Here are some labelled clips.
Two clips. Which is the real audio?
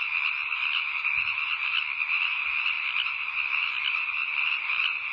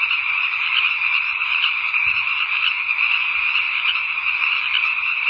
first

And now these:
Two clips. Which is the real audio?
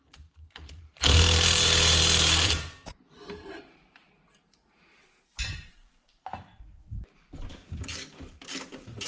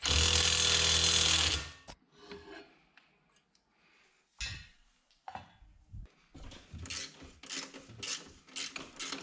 second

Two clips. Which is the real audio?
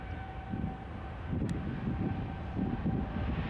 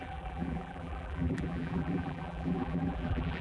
first